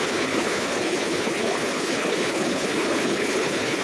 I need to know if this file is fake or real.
fake